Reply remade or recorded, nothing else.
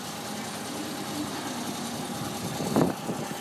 recorded